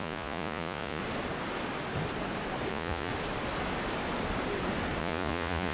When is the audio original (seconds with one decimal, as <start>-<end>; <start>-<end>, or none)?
1.0-2.7; 3.1-5.0